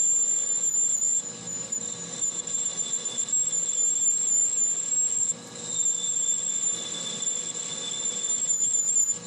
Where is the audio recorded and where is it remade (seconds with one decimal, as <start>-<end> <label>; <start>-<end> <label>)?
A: 0.0-9.3 recorded